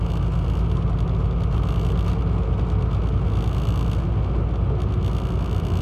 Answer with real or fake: real